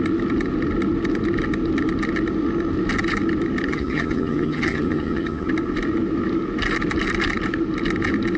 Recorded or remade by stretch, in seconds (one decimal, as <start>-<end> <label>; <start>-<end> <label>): 0.0-3.7 recorded; 3.7-5.5 remade; 5.5-8.4 recorded